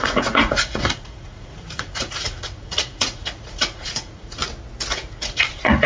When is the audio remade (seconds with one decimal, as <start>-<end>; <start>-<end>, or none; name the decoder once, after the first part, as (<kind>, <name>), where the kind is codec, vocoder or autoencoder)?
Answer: 0.0-4.4 (vocoder, Vocos); 4.9-5.9